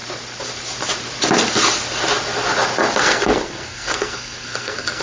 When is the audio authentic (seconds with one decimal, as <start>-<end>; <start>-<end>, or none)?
0.0-3.0